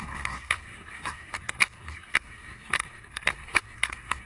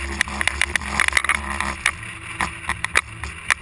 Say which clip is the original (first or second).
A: second